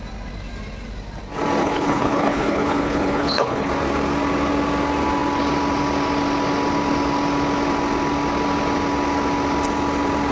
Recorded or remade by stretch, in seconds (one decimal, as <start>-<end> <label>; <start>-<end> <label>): 0.0-1.6 recorded; 1.6-3.7 remade; 3.7-10.3 recorded